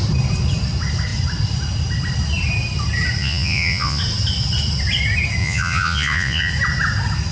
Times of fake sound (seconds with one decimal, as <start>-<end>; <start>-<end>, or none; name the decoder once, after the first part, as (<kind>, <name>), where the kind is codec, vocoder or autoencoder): 3.2-4.0 (vocoder, Vocos); 5.4-6.5